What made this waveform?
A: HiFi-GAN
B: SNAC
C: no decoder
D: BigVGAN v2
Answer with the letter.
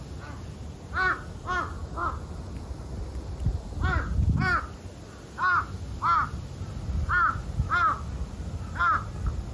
C